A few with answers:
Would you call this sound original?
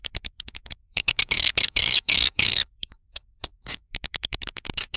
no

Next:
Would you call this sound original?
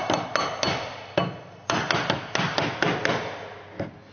yes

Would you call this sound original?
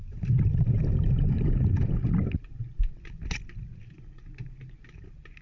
yes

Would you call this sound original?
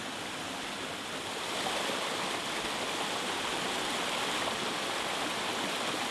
yes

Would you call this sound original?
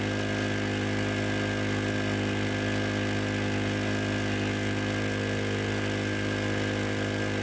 yes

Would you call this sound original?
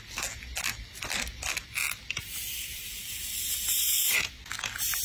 yes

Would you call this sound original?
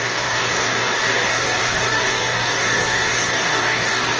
no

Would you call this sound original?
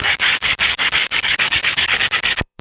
no